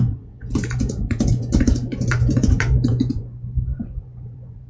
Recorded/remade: remade